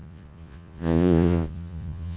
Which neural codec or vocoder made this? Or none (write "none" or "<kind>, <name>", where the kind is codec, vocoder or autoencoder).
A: vocoder, Vocos